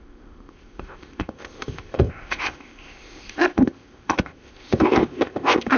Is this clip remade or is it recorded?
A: remade